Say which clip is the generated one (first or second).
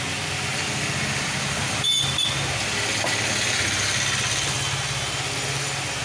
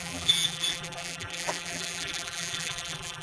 second